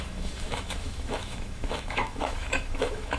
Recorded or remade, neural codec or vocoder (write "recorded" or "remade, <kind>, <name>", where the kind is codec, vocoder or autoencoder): remade, autoencoder, DAC-VAE